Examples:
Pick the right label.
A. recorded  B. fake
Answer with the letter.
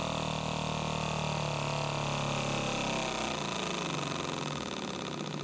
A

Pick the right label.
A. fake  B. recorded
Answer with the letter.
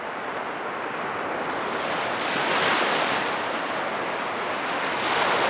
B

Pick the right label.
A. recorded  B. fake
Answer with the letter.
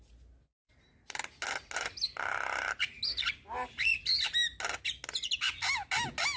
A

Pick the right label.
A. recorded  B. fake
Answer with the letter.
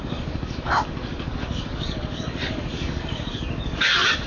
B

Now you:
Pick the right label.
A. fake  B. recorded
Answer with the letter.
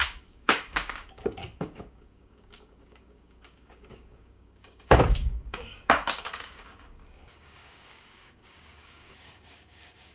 A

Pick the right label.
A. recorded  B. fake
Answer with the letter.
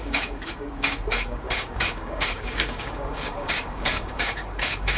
B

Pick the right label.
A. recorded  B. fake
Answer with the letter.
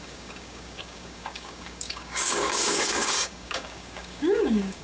B